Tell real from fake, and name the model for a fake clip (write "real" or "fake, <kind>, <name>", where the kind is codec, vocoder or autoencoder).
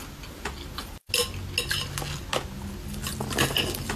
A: real